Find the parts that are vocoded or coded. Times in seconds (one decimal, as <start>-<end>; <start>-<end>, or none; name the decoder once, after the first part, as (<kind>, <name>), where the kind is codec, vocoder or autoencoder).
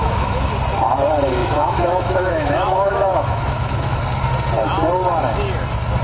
0.0-0.5 (autoencoder, DAC-VAE); 1.4-4.0